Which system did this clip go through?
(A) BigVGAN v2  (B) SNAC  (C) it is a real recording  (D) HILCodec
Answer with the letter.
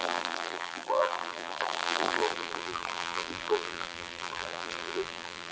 A